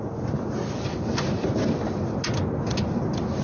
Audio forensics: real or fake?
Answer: real